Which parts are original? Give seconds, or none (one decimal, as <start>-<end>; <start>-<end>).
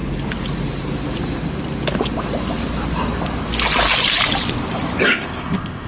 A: 0.0-5.1